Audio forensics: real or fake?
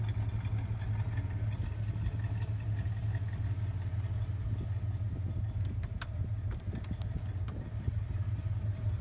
real